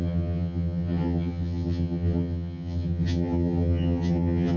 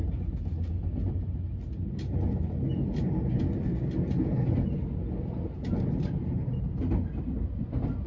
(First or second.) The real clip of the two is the second